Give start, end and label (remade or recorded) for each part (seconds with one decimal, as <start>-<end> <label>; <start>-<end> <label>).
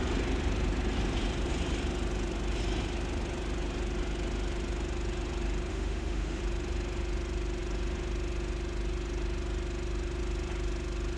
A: 0.0-5.7 recorded; 5.7-6.4 remade; 6.4-11.2 recorded